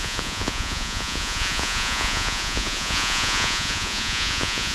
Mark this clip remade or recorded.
remade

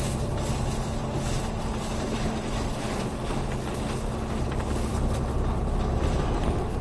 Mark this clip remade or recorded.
recorded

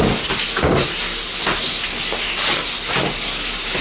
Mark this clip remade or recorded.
recorded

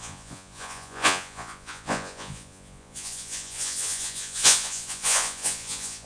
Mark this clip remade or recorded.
remade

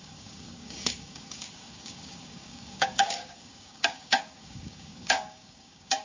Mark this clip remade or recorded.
remade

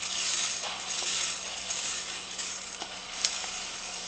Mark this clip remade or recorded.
remade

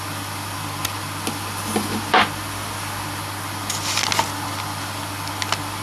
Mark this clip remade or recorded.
recorded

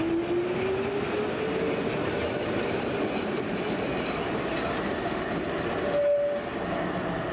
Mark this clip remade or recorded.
recorded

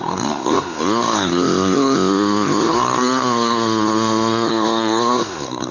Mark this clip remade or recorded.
remade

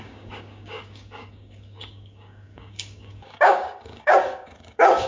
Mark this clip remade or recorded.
remade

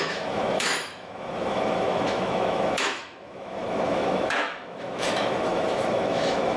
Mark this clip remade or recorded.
remade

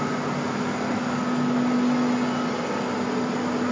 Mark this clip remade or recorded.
recorded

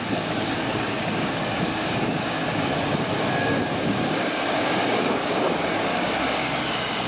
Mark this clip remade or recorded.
remade